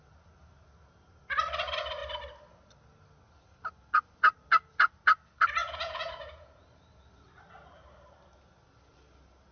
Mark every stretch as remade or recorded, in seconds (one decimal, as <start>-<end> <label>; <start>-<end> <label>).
0.0-5.6 recorded; 5.6-6.6 remade; 6.6-9.5 recorded

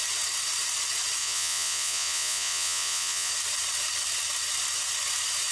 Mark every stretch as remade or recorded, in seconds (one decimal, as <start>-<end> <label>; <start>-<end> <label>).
0.0-1.2 recorded; 1.2-3.3 remade; 3.3-5.5 recorded

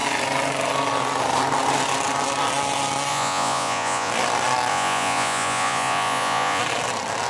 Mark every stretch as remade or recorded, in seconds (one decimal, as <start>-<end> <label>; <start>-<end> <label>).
0.0-3.1 recorded; 3.1-4.1 remade; 4.1-4.7 recorded; 4.7-6.6 remade; 6.6-7.3 recorded